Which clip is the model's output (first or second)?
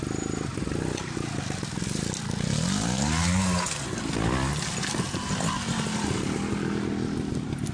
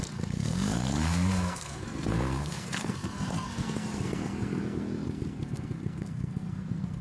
second